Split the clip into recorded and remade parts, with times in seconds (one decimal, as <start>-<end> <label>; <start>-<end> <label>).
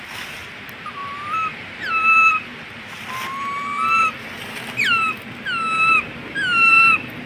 0.0-1.0 recorded; 1.0-1.9 remade; 1.9-7.3 recorded